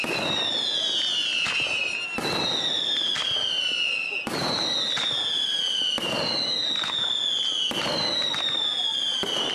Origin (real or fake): real